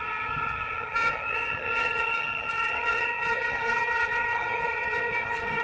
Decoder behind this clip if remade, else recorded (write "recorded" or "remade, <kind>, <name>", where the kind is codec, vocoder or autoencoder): remade, vocoder, HiFi-GAN